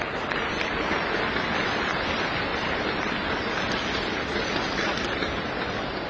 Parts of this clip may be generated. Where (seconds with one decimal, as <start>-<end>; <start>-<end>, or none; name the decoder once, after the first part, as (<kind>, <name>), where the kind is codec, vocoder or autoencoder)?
2.5-3.3 (vocoder, BigVGAN v2)